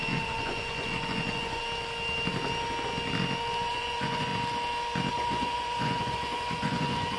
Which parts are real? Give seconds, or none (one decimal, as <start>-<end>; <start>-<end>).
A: 1.6-3.7; 4.3-5.1